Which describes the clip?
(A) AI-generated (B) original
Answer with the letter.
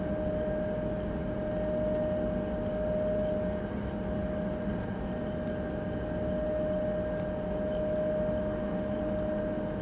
B